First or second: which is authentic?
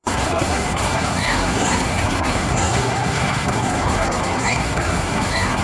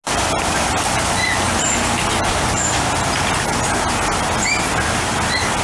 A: second